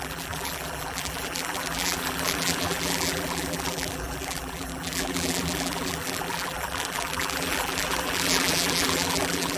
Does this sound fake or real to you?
fake